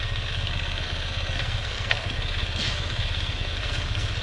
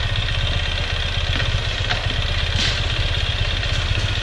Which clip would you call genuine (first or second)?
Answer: second